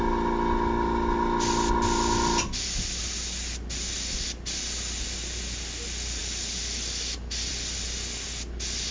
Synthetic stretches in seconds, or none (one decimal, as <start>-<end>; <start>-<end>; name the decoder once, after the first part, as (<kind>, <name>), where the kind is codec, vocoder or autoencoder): none